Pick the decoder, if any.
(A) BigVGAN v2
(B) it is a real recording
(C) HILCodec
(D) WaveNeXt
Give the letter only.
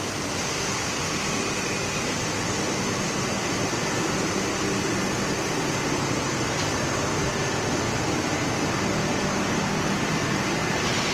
B